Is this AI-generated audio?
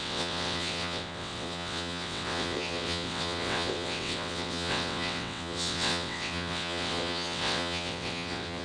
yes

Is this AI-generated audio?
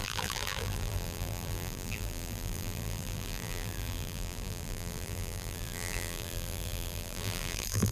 yes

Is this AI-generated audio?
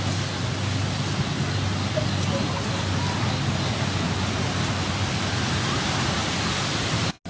no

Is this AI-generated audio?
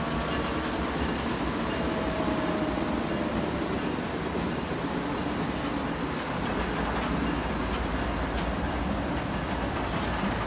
no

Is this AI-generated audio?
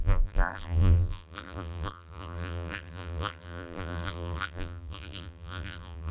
yes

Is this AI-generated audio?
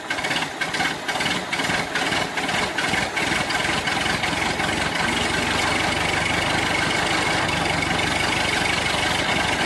no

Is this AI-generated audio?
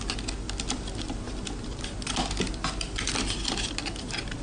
no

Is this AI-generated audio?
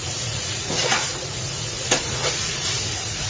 yes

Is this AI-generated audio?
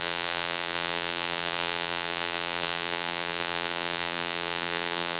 yes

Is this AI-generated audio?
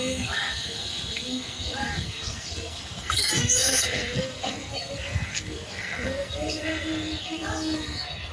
yes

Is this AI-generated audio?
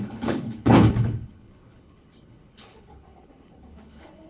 yes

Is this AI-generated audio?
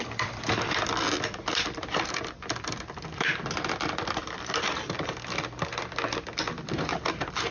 yes